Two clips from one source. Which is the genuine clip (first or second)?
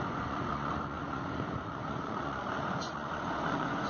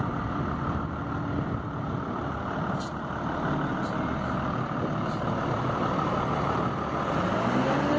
second